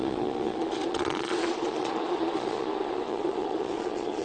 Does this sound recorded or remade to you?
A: remade